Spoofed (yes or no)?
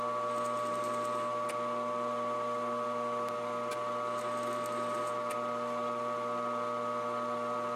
no